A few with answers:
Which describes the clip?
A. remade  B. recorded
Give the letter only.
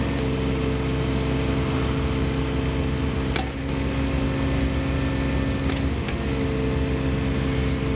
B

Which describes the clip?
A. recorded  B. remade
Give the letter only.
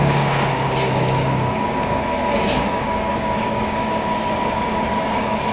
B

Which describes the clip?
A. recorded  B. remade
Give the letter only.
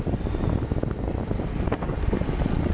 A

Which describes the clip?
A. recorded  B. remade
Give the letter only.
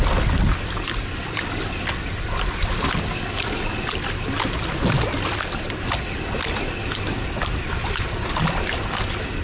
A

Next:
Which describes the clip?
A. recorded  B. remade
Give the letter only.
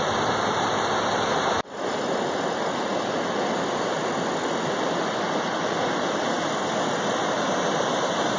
A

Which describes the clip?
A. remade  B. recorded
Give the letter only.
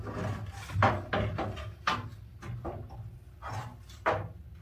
B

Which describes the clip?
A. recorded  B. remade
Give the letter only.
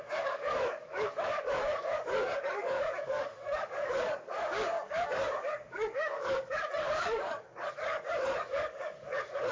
B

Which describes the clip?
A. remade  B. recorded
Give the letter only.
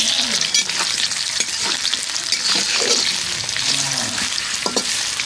B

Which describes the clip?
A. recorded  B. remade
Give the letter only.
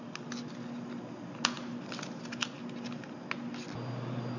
A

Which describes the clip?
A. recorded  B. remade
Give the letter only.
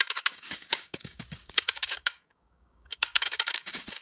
B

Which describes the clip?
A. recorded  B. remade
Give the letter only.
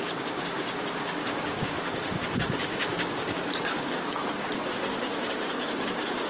B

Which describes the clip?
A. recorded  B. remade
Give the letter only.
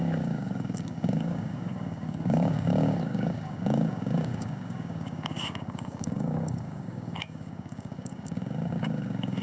B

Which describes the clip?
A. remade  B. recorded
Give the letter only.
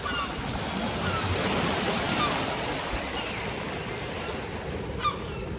B